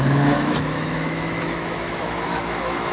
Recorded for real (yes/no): no